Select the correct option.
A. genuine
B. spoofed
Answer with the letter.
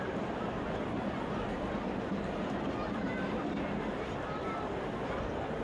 B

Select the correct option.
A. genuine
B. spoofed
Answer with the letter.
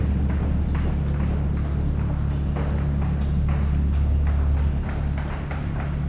A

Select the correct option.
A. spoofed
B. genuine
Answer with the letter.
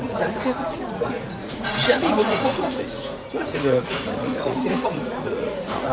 A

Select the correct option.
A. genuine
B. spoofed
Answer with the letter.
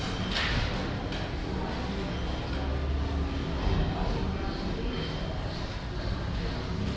A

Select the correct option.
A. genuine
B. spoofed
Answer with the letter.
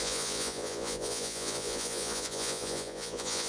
B